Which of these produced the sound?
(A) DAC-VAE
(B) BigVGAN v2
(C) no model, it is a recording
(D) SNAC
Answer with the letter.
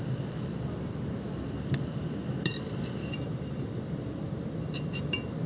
B